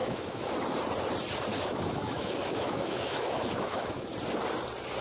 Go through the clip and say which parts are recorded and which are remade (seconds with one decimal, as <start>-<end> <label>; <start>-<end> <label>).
0.0-0.5 remade; 0.5-1.5 recorded; 1.5-4.1 remade; 4.1-5.0 recorded